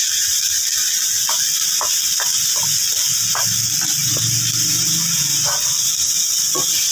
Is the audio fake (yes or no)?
no